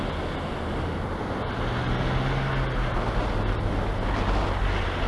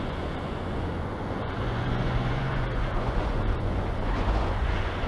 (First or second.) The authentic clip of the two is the first